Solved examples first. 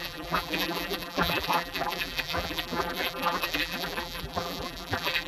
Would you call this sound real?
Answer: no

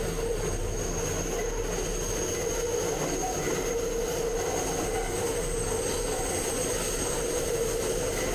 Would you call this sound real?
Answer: yes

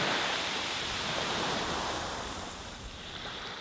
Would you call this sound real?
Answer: no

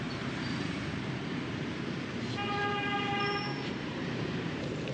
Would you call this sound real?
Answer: no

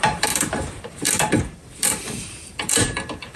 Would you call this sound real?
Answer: no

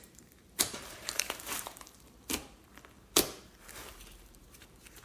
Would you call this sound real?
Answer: no